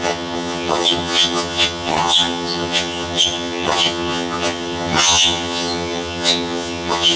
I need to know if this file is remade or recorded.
remade